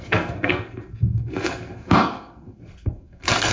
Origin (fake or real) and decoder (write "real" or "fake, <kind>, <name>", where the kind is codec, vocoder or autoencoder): fake, codec, SNAC